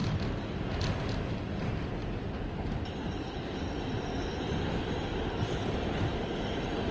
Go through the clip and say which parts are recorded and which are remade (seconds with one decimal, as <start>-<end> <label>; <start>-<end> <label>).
0.0-2.0 recorded; 2.0-6.1 remade; 6.1-6.9 recorded